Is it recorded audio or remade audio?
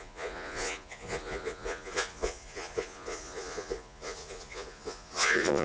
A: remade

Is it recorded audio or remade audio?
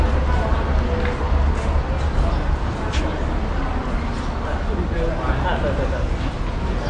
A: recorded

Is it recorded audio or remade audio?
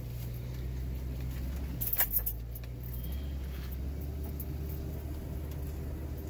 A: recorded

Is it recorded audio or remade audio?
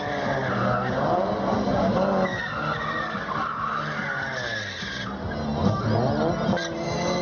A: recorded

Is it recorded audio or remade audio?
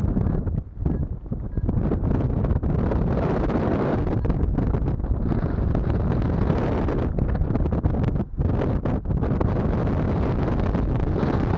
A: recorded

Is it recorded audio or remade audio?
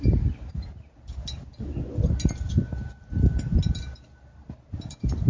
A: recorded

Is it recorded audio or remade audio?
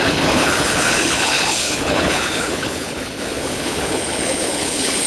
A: remade